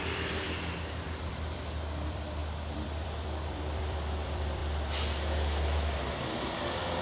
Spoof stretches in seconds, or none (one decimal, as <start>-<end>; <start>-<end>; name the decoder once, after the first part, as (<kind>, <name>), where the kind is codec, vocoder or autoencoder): 0.0-4.6 (vocoder, BigVGAN v2); 6.6-7.0